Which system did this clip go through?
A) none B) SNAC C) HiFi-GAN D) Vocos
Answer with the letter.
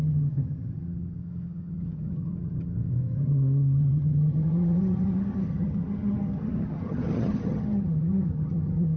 C